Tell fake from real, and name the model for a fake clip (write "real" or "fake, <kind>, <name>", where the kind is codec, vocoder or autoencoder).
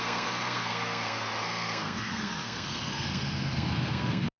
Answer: fake, codec, SNAC